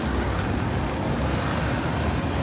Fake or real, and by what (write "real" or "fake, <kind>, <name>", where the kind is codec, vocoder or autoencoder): real